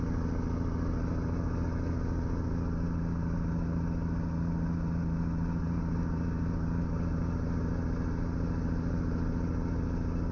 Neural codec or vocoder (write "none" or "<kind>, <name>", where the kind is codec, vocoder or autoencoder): none